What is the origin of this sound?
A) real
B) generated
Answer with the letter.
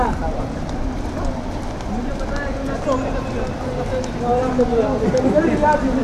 A